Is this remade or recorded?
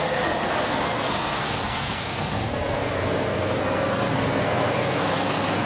remade